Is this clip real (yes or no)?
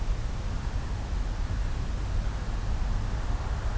yes